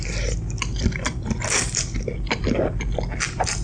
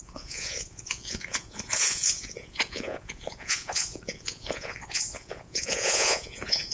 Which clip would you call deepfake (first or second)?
second